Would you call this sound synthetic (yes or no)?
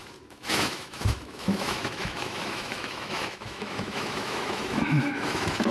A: yes